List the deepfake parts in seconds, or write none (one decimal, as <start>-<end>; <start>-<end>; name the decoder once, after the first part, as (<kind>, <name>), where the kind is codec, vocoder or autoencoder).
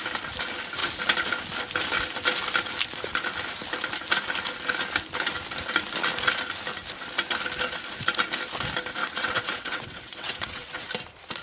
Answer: 9.0-10.9 (vocoder, WaveNeXt)